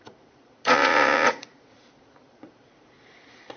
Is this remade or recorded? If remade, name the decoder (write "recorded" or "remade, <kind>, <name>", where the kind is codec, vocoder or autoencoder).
remade, vocoder, Vocos